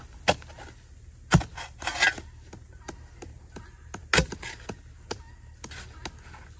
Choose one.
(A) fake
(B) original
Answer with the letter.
B